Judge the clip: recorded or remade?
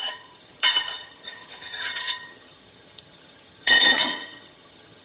remade